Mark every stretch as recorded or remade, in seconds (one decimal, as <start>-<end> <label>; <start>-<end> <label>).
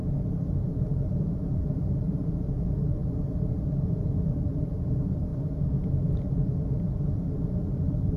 0.0-5.3 remade; 5.3-6.1 recorded; 6.1-8.2 remade